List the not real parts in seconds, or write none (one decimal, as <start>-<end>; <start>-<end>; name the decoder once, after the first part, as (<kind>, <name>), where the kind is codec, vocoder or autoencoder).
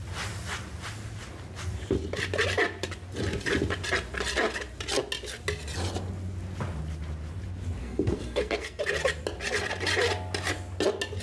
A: 7.8-8.8 (codec, SNAC)